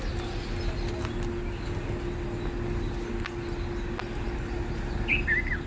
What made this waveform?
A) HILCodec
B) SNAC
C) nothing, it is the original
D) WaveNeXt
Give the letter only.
C